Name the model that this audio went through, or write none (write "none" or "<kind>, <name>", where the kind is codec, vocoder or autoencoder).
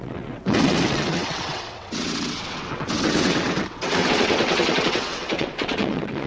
vocoder, WaveNeXt